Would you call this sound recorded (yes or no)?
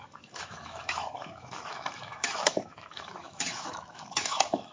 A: no